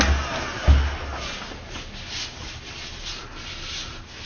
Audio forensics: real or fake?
real